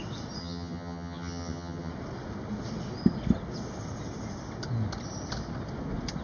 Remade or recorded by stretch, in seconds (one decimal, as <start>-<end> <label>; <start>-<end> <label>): 0.0-0.4 recorded; 0.4-1.9 remade; 1.9-6.2 recorded